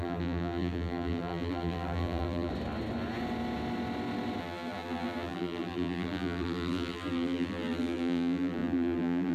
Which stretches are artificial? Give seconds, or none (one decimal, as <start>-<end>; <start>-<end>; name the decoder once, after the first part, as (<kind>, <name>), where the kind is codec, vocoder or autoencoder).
0.0-2.5 (vocoder, BigVGAN v2); 4.4-9.3